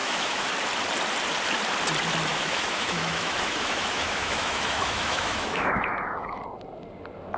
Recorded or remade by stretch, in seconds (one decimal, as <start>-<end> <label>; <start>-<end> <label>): 0.0-0.5 remade; 0.5-2.3 recorded; 2.3-6.4 remade; 6.4-7.4 recorded